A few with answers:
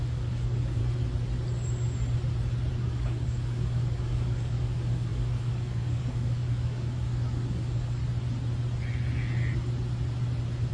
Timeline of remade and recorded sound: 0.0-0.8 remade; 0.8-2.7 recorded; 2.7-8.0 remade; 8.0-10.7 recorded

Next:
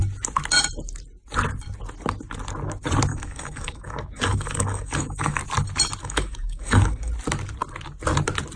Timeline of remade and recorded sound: 0.0-3.1 recorded; 3.1-5.4 remade; 5.4-6.0 recorded; 6.0-7.1 remade; 7.1-8.6 recorded

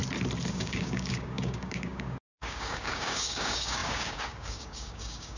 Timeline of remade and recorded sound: 0.0-0.5 recorded; 0.5-5.4 remade